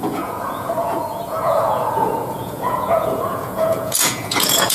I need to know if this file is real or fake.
fake